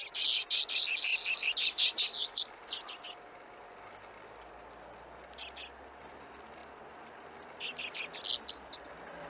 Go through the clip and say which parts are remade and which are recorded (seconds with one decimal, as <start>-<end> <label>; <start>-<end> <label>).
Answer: 0.0-9.3 recorded